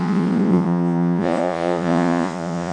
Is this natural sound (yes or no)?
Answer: no